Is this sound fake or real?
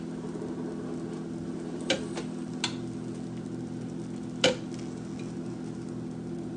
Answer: real